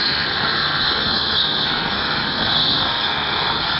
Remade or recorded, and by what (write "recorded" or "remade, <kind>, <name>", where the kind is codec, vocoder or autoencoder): remade, codec, SNAC